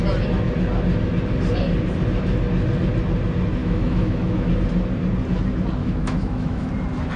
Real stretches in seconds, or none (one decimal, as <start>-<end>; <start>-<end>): 0.0-3.6; 4.5-5.8; 6.7-7.2